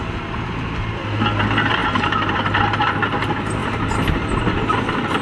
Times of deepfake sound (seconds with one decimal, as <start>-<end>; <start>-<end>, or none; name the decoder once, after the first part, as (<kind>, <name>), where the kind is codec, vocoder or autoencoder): 0.0-3.6 (vocoder, BigVGAN v2); 4.4-5.2